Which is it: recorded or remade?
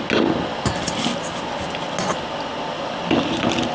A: recorded